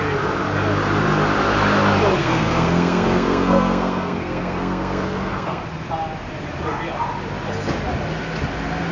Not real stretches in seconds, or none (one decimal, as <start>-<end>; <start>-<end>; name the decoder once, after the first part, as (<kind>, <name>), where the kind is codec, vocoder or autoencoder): 2.2-5.6 (codec, SNAC)